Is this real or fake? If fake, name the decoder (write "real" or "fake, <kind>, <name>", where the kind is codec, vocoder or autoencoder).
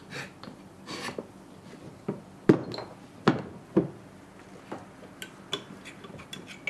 real